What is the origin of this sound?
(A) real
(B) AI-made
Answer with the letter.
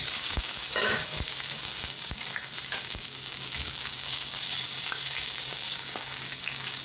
B